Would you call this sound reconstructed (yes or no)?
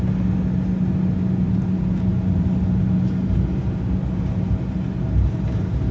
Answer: no